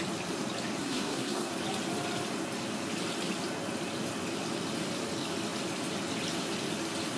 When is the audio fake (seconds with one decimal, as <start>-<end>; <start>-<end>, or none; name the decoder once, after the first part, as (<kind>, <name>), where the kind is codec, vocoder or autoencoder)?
0.8-1.5 (codec, SNAC)